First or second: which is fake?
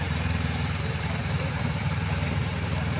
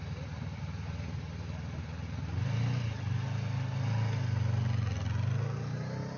first